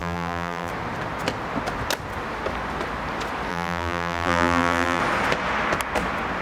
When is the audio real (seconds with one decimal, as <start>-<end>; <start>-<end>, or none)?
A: 0.7-3.5; 5.0-6.4